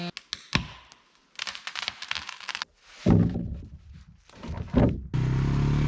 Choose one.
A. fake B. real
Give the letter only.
B